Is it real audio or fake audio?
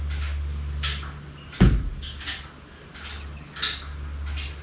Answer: real